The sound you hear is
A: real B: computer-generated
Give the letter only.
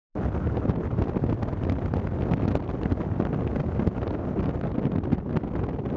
A